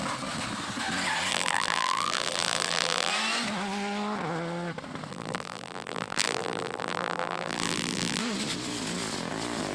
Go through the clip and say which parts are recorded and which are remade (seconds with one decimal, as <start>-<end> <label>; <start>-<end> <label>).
0.0-1.3 recorded; 1.3-3.1 remade; 3.1-5.1 recorded; 5.1-8.2 remade; 8.2-9.7 recorded